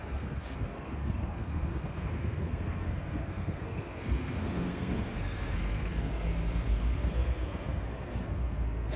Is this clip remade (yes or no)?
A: yes